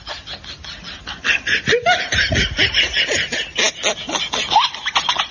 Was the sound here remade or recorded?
recorded